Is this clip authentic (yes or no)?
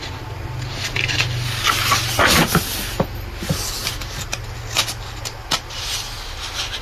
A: yes